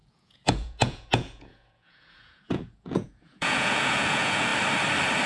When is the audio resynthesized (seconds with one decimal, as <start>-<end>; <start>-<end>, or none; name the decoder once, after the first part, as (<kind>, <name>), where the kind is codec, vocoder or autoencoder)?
0.0-4.5 (vocoder, Vocos)